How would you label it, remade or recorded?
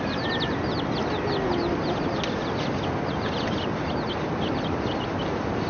recorded